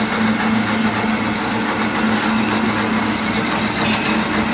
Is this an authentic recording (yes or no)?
yes